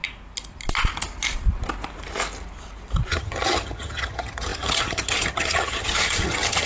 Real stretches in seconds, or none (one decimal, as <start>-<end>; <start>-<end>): 0.0-3.1

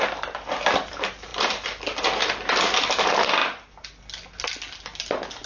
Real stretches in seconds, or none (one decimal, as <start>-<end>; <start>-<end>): 0.0-5.5

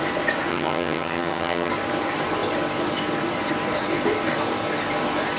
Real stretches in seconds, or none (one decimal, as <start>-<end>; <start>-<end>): 0.0-0.5; 1.7-5.4

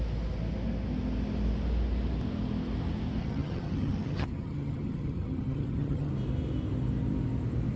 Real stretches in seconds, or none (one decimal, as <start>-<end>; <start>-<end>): 0.0-3.2; 6.1-7.8

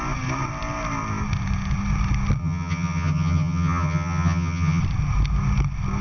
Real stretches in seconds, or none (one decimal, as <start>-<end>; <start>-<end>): 0.0-2.4; 4.8-6.0

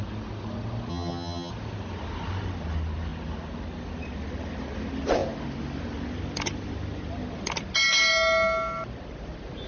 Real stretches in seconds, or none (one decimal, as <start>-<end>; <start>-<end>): 0.0-0.9; 1.5-9.7

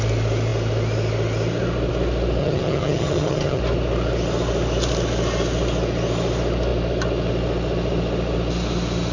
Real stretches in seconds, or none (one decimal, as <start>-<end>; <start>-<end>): 0.0-2.4; 3.6-9.1